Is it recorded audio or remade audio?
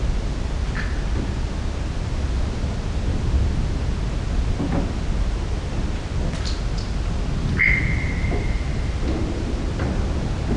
recorded